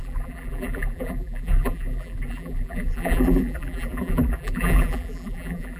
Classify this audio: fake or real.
fake